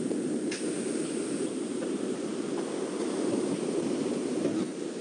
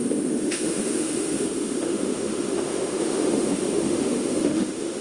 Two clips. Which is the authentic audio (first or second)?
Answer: first